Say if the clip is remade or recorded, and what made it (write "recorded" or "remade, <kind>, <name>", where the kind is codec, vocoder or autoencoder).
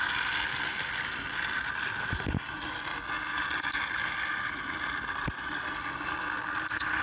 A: recorded